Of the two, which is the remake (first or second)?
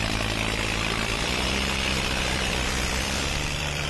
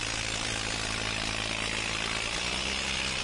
first